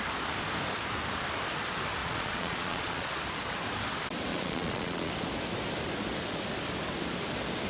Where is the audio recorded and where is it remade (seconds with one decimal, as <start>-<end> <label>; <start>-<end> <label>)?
0.0-2.0 recorded; 2.0-3.1 remade; 3.1-4.3 recorded; 4.3-5.1 remade; 5.1-7.7 recorded